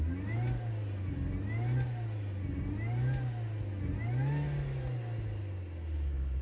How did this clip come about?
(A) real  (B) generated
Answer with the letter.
A